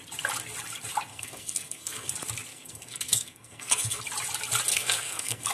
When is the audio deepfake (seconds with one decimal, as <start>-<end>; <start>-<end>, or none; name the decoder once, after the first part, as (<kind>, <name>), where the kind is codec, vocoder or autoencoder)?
1.1-2.1 (codec, SNAC); 2.5-4.0; 4.7-5.5